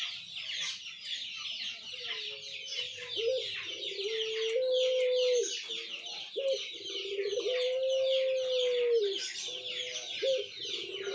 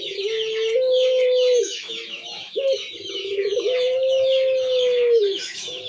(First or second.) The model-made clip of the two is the second